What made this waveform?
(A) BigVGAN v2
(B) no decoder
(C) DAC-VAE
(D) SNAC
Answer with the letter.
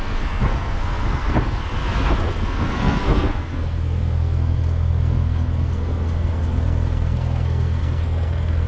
D